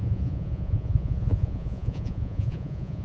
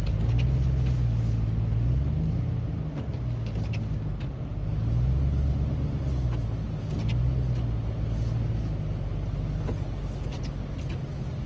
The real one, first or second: second